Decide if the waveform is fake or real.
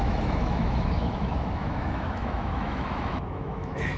fake